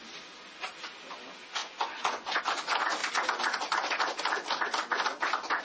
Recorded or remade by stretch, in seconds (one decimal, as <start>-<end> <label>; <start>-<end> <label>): 0.0-1.6 recorded; 1.6-2.4 remade; 2.4-5.6 recorded

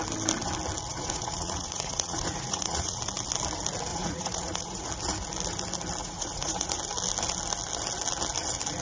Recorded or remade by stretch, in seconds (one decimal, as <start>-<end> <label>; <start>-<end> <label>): 0.0-0.9 recorded; 0.9-3.0 remade; 3.0-3.9 recorded; 3.9-4.9 remade; 4.9-6.0 recorded; 6.0-6.8 remade; 6.8-8.8 recorded